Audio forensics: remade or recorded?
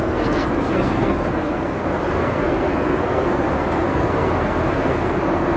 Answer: remade